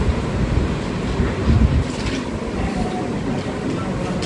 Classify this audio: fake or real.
real